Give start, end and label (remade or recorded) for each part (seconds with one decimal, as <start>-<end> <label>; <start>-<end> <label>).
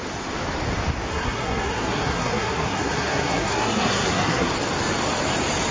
0.0-1.1 recorded; 1.1-4.5 remade; 4.5-5.7 recorded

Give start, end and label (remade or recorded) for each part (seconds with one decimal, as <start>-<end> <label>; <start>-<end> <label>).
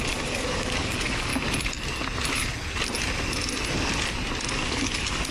0.0-1.3 remade; 1.3-4.5 recorded; 4.5-5.3 remade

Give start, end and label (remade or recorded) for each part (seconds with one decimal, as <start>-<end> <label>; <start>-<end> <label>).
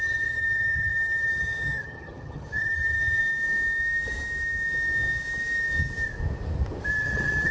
0.0-3.2 remade; 3.2-6.9 recorded; 6.9-7.5 remade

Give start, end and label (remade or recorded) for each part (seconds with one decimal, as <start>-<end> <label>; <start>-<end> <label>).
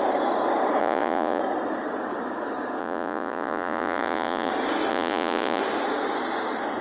0.0-0.8 recorded; 0.8-1.4 remade; 1.4-2.8 recorded; 2.8-4.5 remade; 4.5-4.9 recorded; 4.9-5.6 remade; 5.6-6.8 recorded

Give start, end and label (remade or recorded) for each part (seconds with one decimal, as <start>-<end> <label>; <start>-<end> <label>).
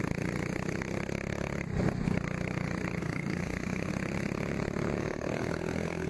0.0-3.0 recorded; 3.0-3.9 remade; 3.9-5.0 recorded; 5.0-6.1 remade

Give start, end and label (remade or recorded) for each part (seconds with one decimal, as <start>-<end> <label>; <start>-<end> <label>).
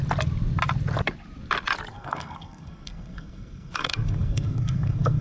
0.0-1.9 recorded; 1.9-5.2 remade